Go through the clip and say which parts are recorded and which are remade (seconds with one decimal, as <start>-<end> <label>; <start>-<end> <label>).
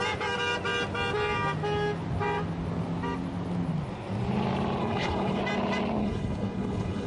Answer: 0.0-4.8 recorded; 4.8-5.4 remade; 5.4-6.0 recorded; 6.0-7.1 remade